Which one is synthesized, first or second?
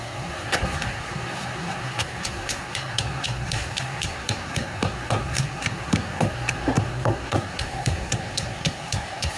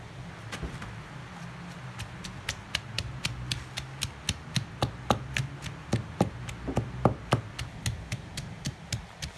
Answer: first